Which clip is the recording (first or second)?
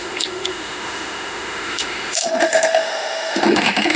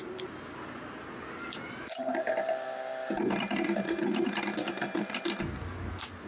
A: second